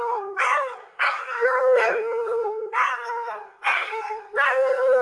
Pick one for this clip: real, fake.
fake